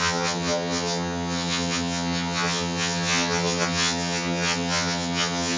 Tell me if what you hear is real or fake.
fake